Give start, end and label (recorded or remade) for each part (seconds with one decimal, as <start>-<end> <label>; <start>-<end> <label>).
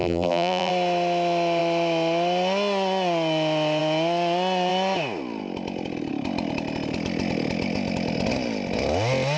0.0-0.7 remade; 0.7-9.4 recorded